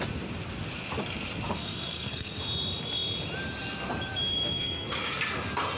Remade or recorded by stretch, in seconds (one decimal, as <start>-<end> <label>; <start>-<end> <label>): 0.0-1.6 recorded; 1.6-2.4 remade; 2.4-4.3 recorded; 4.3-4.9 remade; 4.9-5.8 recorded